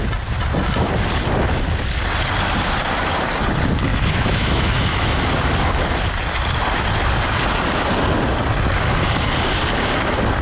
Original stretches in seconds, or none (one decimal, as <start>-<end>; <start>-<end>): 0.0-3.9; 5.1-10.4